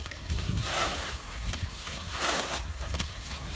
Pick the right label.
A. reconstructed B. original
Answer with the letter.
A